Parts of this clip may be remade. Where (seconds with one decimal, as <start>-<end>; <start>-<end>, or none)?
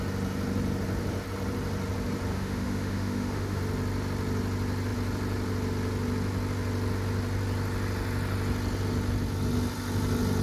2.3-3.6